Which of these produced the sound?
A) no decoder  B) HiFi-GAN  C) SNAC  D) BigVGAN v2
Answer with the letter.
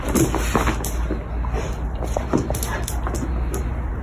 A